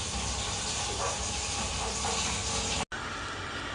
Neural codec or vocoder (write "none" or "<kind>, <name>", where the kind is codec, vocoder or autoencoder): none